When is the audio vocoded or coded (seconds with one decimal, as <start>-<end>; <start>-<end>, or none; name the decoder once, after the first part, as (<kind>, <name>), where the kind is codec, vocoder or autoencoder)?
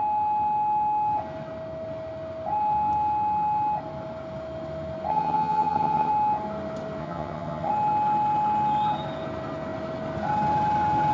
5.1-6.1 (vocoder, HiFi-GAN); 7.0-7.7